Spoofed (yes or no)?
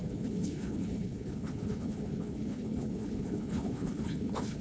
yes